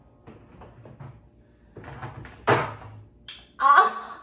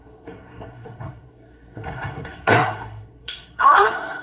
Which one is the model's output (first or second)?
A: second